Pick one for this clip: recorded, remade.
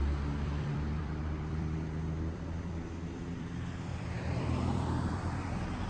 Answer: remade